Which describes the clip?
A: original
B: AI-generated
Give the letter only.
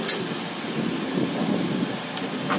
A